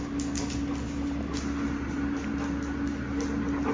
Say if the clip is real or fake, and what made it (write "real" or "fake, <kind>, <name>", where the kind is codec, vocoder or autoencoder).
real